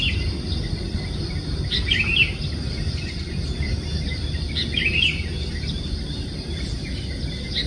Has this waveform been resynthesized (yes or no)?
no